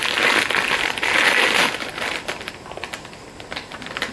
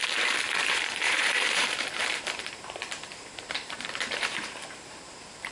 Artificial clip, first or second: second